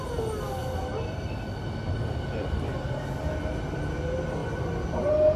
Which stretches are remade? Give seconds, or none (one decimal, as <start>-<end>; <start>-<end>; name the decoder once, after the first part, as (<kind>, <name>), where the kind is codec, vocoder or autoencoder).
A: none